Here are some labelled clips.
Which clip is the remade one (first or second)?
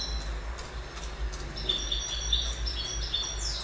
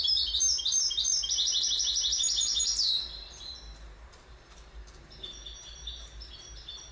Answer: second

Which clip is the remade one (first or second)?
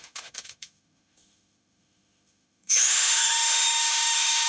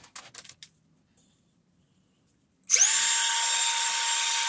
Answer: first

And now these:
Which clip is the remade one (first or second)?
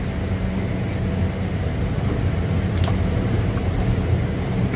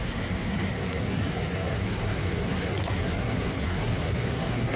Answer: second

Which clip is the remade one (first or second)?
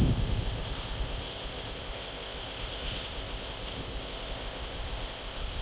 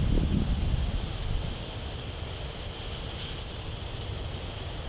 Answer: first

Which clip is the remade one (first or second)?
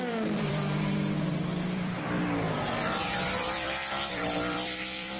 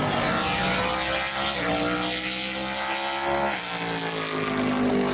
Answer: first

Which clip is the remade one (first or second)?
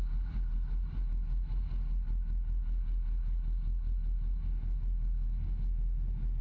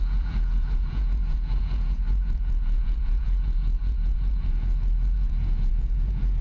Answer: second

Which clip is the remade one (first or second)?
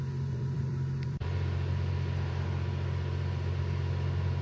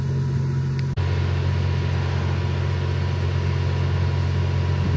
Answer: first